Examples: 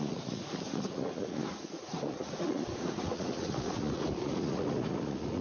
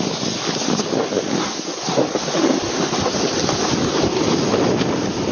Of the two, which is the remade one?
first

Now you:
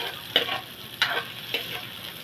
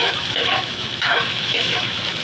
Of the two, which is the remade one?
second